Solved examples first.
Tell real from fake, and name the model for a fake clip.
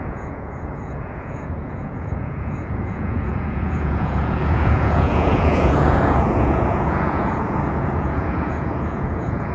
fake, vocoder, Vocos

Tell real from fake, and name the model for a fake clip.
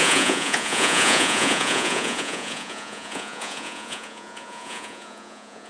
fake, vocoder, Vocos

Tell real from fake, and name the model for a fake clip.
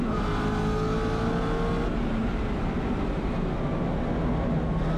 real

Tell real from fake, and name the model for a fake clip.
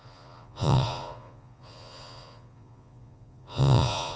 fake, vocoder, Vocos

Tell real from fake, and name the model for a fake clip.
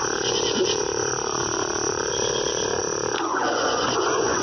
fake, vocoder, Vocos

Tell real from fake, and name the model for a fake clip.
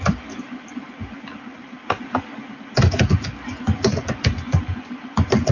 real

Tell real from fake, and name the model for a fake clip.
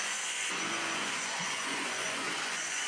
fake, vocoder, Vocos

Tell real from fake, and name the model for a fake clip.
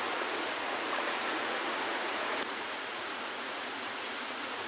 fake, vocoder, Vocos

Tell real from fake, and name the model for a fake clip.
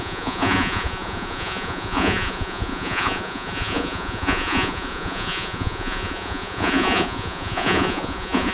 fake, vocoder, Vocos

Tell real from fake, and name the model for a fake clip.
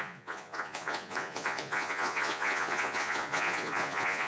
fake, vocoder, Vocos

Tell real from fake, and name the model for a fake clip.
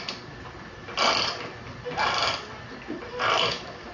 real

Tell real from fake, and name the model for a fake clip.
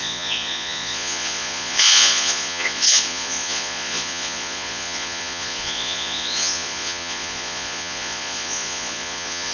fake, vocoder, Vocos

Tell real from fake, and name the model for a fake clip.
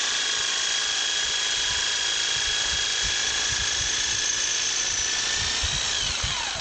real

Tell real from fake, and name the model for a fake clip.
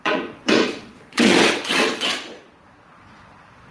fake, vocoder, Vocos